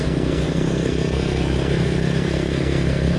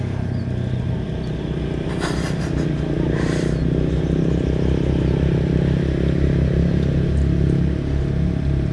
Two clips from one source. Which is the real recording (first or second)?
second